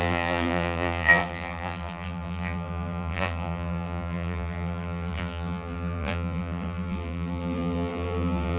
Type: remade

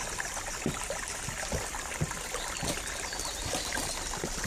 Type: recorded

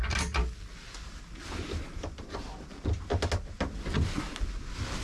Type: recorded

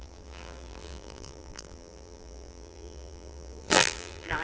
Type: remade